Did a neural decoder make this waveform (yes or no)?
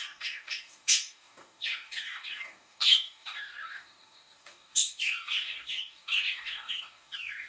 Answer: yes